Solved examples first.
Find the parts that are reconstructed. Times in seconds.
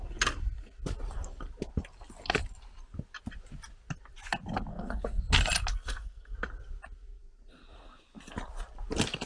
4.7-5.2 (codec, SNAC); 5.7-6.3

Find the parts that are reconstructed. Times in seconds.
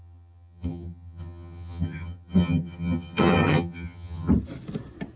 0.0-4.3 (vocoder, HiFi-GAN)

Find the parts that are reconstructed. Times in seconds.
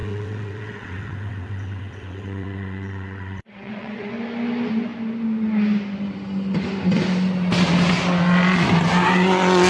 0.0-4.1 (vocoder, WaveNeXt)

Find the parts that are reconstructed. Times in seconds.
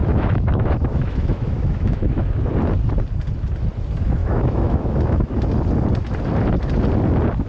0.0-2.4 (autoencoder, DAC-VAE); 4.2-5.4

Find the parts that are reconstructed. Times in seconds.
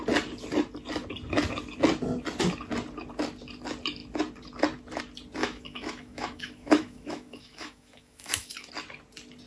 5.4-8.7 (autoencoder, DAC-VAE)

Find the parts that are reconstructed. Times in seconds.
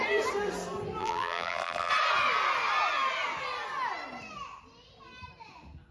1.0-1.9 (vocoder, BigVGAN v2)